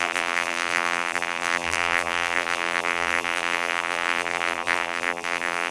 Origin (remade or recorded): remade